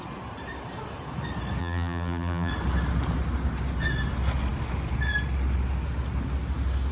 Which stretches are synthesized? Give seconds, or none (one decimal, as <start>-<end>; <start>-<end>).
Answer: 1.6-2.5